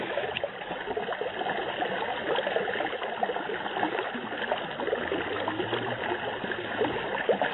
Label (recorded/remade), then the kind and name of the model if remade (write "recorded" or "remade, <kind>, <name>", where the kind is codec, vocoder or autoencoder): recorded